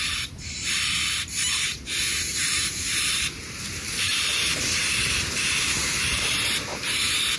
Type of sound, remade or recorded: remade